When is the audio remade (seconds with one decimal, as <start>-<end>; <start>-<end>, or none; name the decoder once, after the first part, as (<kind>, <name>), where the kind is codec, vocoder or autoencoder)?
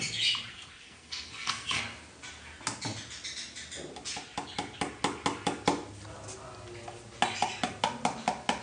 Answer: 0.5-1.8 (codec, SNAC)